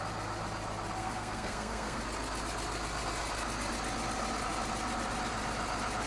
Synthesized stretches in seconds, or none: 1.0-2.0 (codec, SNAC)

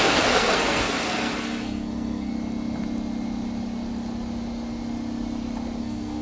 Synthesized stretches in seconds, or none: 0.0-2.3 (codec, SNAC); 5.8-6.2